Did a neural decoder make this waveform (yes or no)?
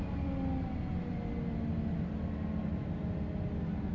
no